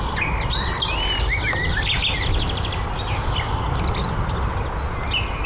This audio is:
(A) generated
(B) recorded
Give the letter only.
B